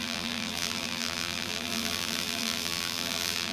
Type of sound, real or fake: fake